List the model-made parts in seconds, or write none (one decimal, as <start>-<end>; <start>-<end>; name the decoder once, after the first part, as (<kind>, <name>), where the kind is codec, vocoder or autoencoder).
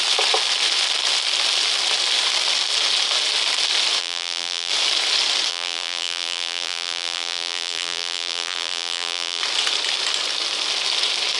4.0-4.7 (vocoder, BigVGAN v2); 5.5-9.4